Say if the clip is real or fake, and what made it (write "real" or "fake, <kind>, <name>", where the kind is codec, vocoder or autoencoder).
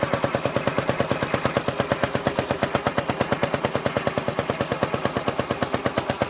real